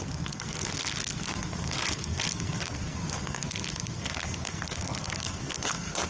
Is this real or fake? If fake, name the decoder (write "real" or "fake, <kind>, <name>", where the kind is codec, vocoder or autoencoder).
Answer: fake, codec, SNAC